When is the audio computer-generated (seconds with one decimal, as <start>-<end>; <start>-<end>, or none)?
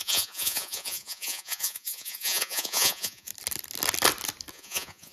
0.0-3.3; 4.5-5.1